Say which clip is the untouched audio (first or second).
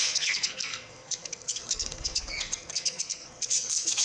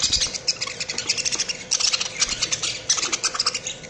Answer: second